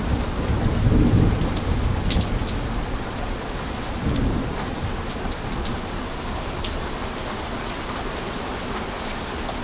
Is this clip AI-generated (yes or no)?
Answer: no